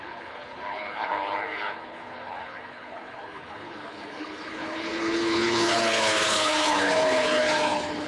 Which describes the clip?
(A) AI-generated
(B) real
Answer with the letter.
A